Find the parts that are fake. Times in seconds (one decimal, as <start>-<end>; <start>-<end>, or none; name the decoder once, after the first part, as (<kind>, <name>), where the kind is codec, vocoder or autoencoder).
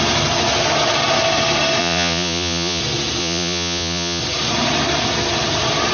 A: 1.8-2.8 (vocoder, Vocos); 3.2-4.2